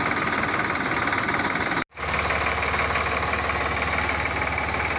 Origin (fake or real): real